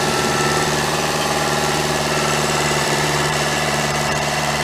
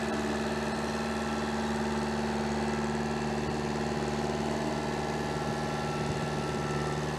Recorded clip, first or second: second